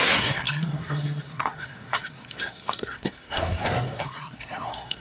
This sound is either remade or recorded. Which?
remade